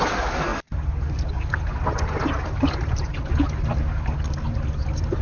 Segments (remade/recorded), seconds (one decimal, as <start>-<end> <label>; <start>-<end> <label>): 0.0-5.2 recorded